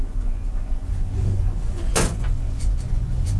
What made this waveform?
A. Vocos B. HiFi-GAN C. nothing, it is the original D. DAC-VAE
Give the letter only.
A